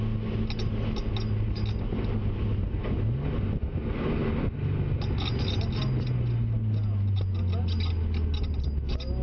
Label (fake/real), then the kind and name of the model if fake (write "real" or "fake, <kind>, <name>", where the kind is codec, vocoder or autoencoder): real